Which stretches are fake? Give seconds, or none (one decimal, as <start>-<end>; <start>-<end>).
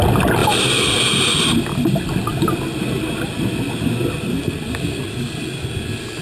none